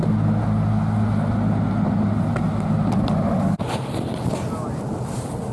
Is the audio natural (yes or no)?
yes